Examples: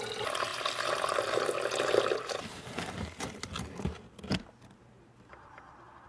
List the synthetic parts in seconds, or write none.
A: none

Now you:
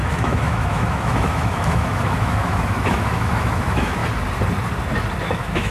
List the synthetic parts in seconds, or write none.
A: 0.0-4.0 (autoencoder, DAC-VAE); 5.2-5.7

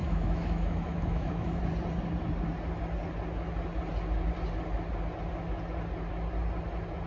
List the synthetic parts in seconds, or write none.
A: 0.0-1.6 (autoencoder, DAC-VAE)

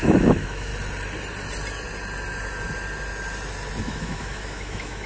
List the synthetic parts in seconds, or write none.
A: 0.0-0.7 (autoencoder, DAC-VAE); 3.8-5.1

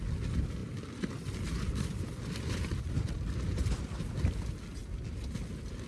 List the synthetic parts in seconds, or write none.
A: none

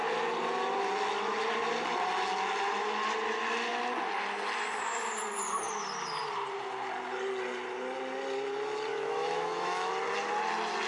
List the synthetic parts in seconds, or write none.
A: 8.9-9.9 (autoencoder, DAC-VAE)